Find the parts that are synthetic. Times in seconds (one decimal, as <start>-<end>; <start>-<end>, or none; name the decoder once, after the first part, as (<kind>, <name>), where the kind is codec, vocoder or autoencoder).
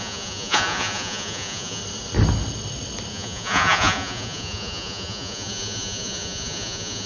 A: 0.0-1.8 (vocoder, Vocos); 3.1-7.1